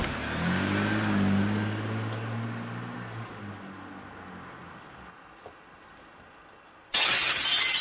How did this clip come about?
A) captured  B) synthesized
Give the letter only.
A